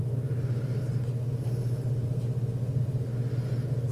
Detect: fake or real real